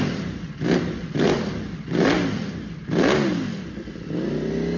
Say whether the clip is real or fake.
real